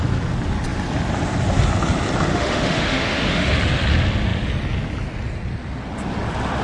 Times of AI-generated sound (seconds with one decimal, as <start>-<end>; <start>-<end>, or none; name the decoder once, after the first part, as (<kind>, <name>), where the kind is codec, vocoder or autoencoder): 2.3-3.5 (autoencoder, DAC-VAE)